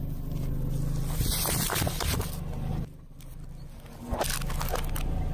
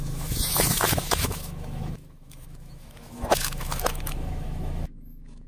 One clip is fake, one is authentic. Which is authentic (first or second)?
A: first